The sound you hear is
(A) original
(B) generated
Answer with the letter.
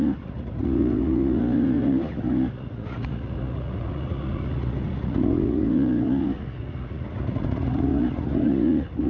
B